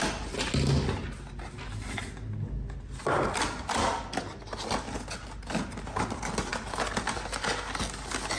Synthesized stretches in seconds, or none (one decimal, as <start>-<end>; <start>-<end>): none